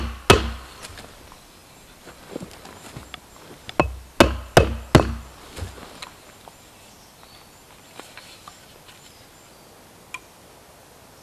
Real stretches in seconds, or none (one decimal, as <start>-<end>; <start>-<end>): 0.0-11.2